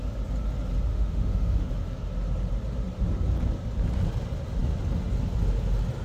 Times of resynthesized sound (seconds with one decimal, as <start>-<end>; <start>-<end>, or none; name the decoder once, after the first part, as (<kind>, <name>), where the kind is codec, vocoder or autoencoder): 0.9-1.7 (autoencoder, DAC-VAE)